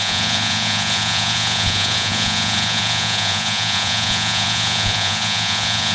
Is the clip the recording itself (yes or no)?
no